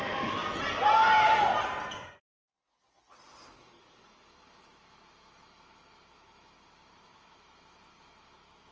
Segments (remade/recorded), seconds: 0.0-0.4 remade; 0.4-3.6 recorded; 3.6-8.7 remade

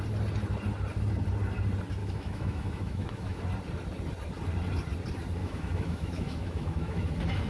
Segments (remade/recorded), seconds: 0.0-2.0 recorded; 2.0-3.4 remade; 3.4-5.4 recorded; 5.4-7.1 remade; 7.1-7.5 recorded

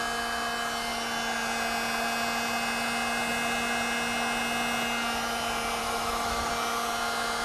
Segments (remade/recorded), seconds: 0.0-5.8 recorded; 5.8-6.5 remade; 6.5-7.4 recorded

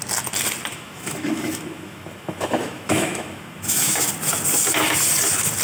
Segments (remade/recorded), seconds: 0.0-0.7 recorded; 0.7-4.1 remade; 4.1-5.6 recorded

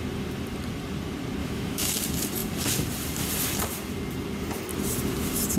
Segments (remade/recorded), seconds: 0.0-1.4 recorded; 1.4-1.9 remade; 1.9-5.6 recorded

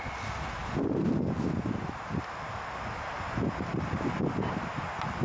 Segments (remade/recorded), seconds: 0.0-5.2 recorded

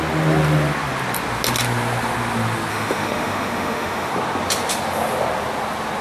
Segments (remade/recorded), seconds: 0.0-2.7 recorded; 2.7-4.1 remade; 4.1-6.0 recorded